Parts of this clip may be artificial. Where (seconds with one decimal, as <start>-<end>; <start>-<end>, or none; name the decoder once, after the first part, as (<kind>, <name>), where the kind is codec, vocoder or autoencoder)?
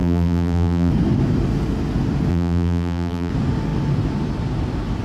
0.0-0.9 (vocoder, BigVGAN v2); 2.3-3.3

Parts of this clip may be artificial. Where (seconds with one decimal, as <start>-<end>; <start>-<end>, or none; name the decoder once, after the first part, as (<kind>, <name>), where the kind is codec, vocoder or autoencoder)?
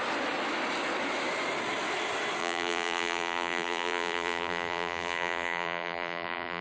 2.4-6.6 (vocoder, BigVGAN v2)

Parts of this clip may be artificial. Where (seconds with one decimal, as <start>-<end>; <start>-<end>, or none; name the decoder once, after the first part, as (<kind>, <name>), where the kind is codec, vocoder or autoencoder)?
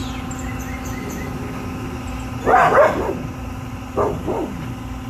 none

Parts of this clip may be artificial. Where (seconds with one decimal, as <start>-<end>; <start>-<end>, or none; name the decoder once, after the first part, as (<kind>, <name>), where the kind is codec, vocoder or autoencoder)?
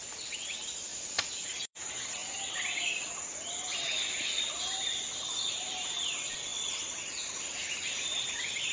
0.9-1.8 (vocoder, BigVGAN v2)